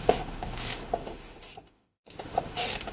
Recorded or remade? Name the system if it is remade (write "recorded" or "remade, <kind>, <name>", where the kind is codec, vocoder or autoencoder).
remade, autoencoder, DAC-VAE